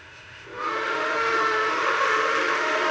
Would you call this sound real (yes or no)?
no